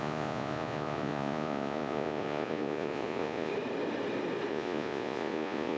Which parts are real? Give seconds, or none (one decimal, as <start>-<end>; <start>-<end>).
3.5-4.5